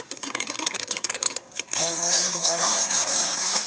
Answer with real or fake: fake